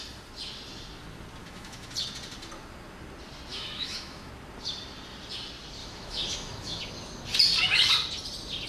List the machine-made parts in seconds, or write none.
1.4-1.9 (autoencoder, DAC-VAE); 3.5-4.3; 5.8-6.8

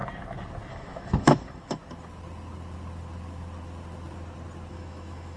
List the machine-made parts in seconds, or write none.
0.7-1.8 (autoencoder, DAC-VAE); 4.7-5.4